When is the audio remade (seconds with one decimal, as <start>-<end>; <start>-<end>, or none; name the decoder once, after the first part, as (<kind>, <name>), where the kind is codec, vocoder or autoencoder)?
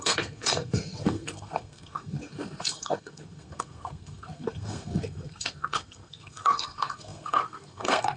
0.0-8.2 (codec, SNAC)